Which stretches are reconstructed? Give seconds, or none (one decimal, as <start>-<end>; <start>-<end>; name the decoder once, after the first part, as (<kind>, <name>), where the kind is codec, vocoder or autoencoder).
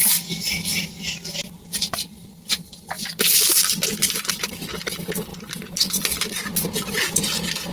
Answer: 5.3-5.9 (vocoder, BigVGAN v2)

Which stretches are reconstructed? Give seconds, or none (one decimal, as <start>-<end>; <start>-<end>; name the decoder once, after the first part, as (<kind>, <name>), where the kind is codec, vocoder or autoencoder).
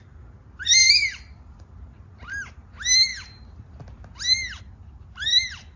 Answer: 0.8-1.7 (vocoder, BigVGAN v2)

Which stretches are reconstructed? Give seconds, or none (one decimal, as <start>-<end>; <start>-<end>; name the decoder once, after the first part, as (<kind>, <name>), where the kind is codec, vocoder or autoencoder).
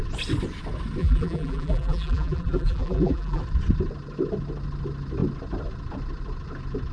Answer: 1.0-3.4 (vocoder, BigVGAN v2)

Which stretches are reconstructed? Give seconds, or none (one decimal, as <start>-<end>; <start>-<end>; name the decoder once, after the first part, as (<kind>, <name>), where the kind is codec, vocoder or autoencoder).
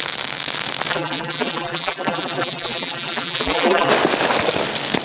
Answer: 0.9-3.9 (vocoder, BigVGAN v2)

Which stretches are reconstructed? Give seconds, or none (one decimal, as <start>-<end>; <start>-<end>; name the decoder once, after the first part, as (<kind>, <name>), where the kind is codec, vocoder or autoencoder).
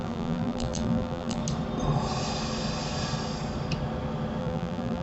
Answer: 0.0-1.4 (vocoder, BigVGAN v2); 4.4-5.0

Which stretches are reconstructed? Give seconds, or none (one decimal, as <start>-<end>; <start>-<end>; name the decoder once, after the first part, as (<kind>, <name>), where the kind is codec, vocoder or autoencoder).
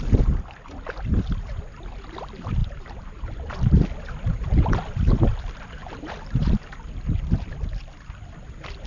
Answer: 2.6-3.5 (vocoder, BigVGAN v2); 5.8-6.5